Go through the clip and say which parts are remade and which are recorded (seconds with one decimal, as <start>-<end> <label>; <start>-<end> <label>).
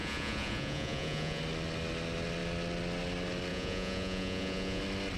0.0-1.4 remade; 1.4-3.5 recorded; 3.5-4.8 remade; 4.8-5.2 recorded